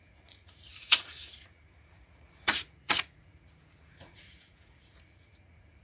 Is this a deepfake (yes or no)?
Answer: yes